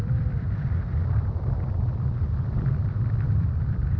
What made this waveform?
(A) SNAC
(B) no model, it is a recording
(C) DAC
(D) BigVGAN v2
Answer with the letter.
D